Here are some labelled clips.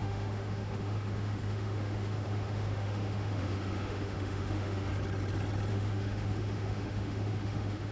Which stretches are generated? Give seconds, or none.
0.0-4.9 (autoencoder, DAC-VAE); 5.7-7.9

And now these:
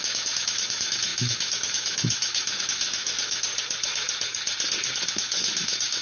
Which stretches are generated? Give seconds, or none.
0.0-3.5 (autoencoder, DAC-VAE); 5.1-6.0

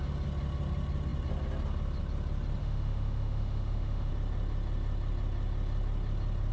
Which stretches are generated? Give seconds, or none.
2.6-4.1 (autoencoder, DAC-VAE)

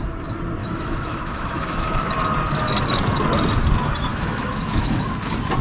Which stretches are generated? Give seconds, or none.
0.6-2.1 (autoencoder, DAC-VAE); 4.1-4.9

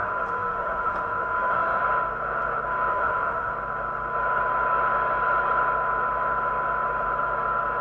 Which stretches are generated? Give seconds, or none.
0.0-1.8 (autoencoder, DAC-VAE); 2.9-3.5

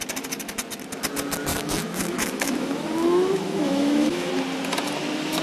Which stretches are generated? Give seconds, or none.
1.5-4.3 (autoencoder, DAC-VAE)

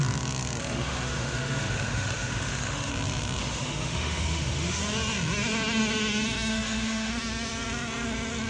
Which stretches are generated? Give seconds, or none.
0.6-2.9 (autoencoder, DAC-VAE); 3.4-4.8; 6.5-7.1